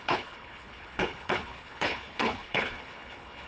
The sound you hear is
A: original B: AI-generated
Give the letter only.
B